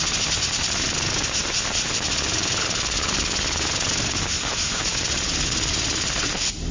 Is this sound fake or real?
real